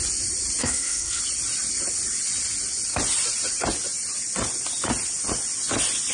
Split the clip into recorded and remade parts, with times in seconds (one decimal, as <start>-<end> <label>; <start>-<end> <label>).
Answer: 0.0-0.6 recorded; 0.6-1.2 remade; 1.2-6.1 recorded